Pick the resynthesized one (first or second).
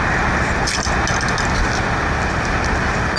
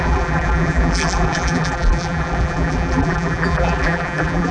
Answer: second